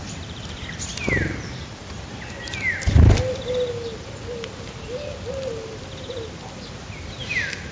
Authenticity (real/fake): real